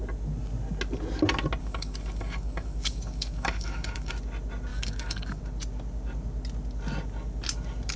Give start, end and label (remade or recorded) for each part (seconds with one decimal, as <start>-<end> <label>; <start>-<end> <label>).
0.0-1.6 recorded; 1.6-4.1 remade; 4.1-4.7 recorded; 4.7-5.4 remade; 5.4-8.0 recorded